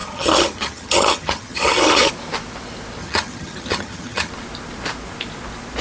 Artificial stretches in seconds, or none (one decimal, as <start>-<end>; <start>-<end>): 0.0-2.1; 3.0-4.3